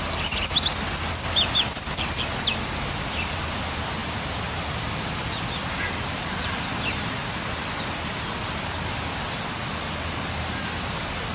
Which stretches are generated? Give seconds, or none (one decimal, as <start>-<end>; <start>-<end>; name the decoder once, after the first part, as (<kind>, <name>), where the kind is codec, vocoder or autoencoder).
4.0-6.6 (vocoder, BigVGAN v2)